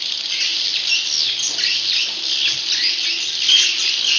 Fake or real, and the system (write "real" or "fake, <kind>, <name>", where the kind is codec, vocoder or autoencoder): real